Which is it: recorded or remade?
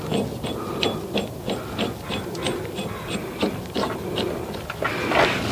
recorded